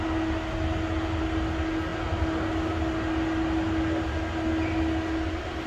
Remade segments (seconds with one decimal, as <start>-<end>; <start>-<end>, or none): none